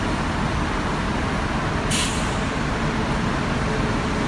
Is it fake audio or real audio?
fake